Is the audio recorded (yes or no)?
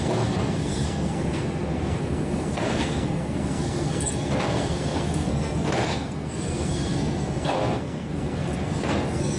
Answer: no